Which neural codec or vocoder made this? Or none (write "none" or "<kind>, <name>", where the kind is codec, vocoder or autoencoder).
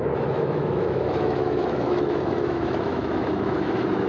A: autoencoder, DAC-VAE